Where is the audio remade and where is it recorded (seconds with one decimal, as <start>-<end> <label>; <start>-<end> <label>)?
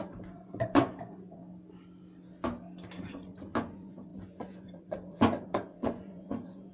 0.0-1.4 remade; 1.4-3.0 recorded; 3.0-6.7 remade